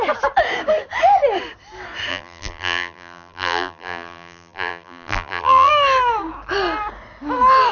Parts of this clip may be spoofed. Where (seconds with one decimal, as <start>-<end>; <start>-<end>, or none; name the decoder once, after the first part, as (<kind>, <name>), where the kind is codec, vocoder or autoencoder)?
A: 2.1-5.7 (vocoder, BigVGAN v2)